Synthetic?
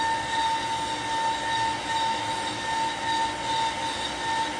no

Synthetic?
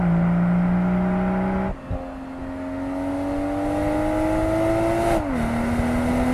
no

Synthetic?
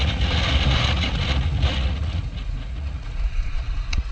yes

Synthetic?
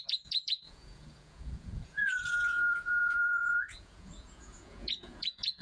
yes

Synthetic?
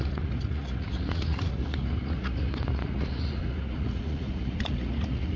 yes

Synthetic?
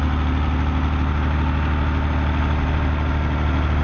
no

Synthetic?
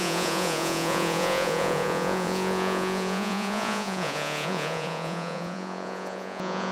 yes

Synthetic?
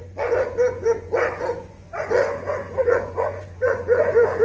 yes